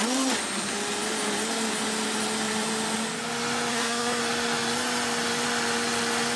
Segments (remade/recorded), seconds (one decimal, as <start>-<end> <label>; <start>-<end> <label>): 0.0-3.7 recorded; 3.7-4.2 remade; 4.2-6.4 recorded